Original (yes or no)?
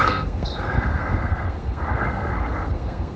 no